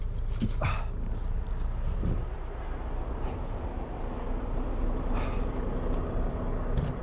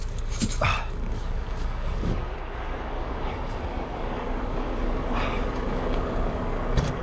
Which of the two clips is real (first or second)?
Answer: first